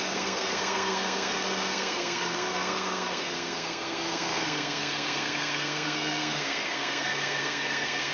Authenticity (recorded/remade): remade